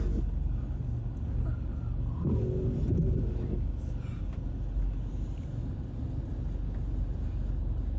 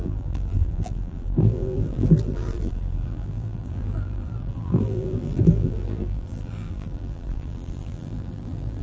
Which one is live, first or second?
first